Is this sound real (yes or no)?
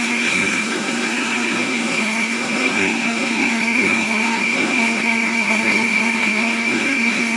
no